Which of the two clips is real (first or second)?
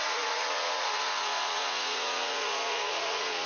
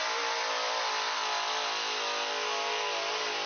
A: second